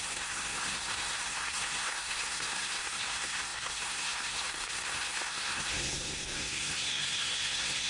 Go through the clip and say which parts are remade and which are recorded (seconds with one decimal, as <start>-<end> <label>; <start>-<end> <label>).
0.0-7.9 remade